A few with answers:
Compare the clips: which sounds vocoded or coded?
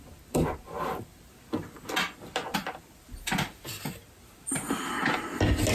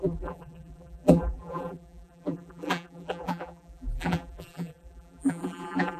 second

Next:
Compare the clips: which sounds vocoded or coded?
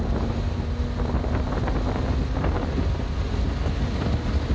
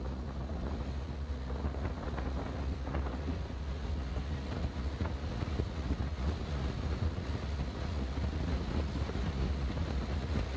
second